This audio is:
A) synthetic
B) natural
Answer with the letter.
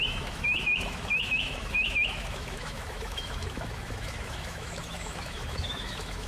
A